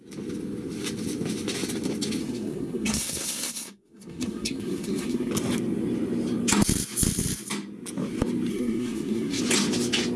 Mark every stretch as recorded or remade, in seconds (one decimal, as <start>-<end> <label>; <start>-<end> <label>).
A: 0.0-2.2 recorded; 2.2-5.3 remade; 5.3-8.5 recorded; 8.5-9.4 remade; 9.4-10.2 recorded

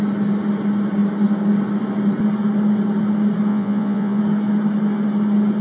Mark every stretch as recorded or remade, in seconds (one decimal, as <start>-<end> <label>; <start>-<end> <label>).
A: 0.0-3.5 recorded; 3.5-4.2 remade; 4.2-5.6 recorded

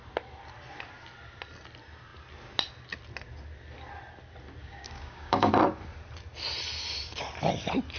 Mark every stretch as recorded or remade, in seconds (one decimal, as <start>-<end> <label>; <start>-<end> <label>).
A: 0.0-4.6 recorded; 4.6-5.5 remade; 5.5-8.0 recorded

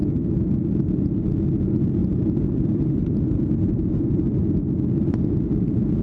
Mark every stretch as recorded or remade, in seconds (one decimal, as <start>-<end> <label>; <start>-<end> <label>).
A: 0.0-1.6 recorded; 1.6-4.4 remade; 4.4-5.6 recorded; 5.6-6.0 remade